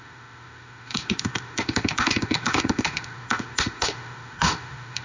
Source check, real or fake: fake